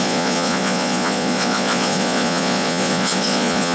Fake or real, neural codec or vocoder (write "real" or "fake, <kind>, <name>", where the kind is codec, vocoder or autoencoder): fake, vocoder, Vocos